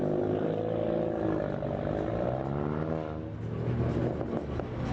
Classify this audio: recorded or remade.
recorded